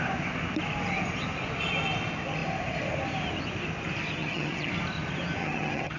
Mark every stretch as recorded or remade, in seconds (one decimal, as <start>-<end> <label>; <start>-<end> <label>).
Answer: 0.0-4.2 recorded; 4.2-4.7 remade; 4.7-5.4 recorded; 5.4-6.0 remade